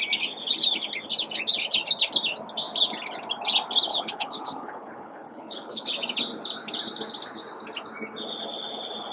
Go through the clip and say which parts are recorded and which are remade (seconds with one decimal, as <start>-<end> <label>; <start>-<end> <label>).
0.0-3.9 recorded; 3.9-5.9 remade; 5.9-9.1 recorded